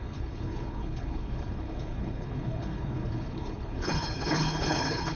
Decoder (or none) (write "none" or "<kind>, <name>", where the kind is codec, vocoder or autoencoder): codec, HILCodec